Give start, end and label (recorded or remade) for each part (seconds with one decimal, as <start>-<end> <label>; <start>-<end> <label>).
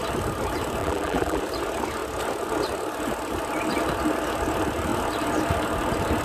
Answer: 0.0-0.8 recorded; 0.8-1.4 remade; 1.4-6.2 recorded